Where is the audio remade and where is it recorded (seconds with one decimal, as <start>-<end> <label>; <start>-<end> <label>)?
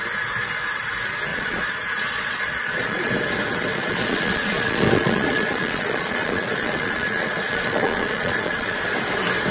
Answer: 0.0-1.3 recorded; 1.3-3.1 remade; 3.1-3.7 recorded; 3.7-8.8 remade; 8.8-9.5 recorded